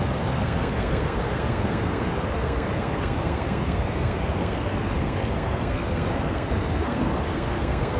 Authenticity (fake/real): fake